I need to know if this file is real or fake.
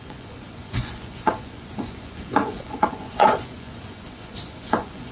fake